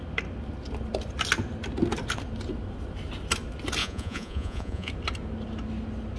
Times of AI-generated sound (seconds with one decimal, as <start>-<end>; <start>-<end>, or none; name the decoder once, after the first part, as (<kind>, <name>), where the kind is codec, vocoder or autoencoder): 3.8-4.9 (vocoder, Vocos)